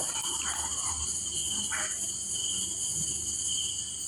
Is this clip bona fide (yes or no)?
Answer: yes